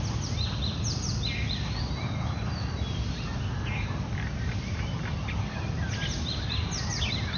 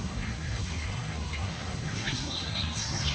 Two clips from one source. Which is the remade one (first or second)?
second